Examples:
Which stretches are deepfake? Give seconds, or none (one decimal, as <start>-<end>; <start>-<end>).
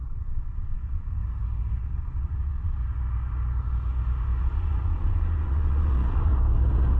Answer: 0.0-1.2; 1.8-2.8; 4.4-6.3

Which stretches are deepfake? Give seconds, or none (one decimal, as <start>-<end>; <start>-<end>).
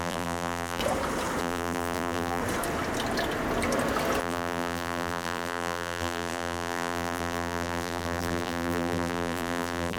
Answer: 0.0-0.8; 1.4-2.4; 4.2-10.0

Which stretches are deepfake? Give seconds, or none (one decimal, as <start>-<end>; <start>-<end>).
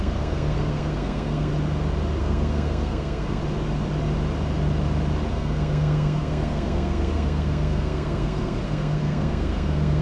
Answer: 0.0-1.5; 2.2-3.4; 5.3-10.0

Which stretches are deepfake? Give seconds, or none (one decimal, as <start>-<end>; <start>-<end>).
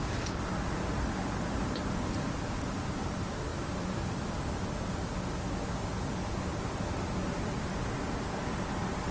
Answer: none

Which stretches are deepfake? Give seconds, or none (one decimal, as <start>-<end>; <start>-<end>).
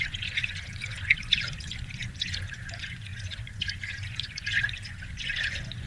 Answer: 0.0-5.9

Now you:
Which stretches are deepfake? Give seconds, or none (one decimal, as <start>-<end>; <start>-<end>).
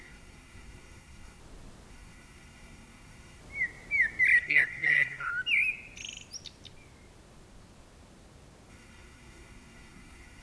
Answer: 0.0-1.4; 1.9-3.4; 4.4-5.3; 8.7-10.4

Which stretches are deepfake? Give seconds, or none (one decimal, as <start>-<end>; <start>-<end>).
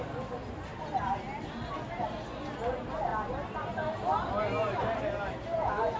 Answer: none